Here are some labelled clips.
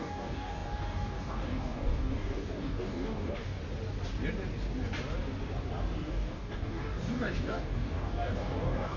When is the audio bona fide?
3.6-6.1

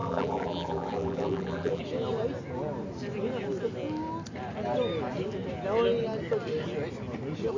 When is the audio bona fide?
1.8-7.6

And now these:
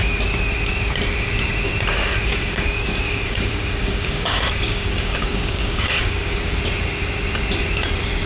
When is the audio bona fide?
0.0-2.2; 6.6-8.3

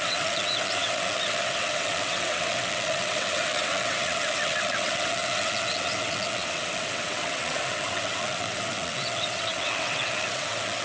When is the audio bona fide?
none

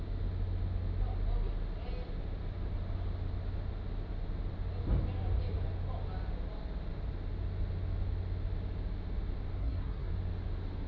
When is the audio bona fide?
0.0-9.6; 10.1-10.9

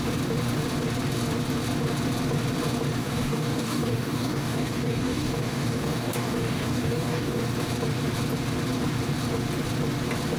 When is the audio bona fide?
0.0-3.0; 7.4-10.4

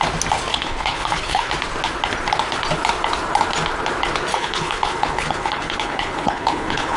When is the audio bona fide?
0.0-0.5; 1.5-4.3